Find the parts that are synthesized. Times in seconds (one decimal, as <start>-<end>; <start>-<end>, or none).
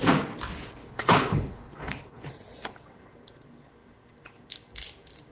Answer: 0.8-2.3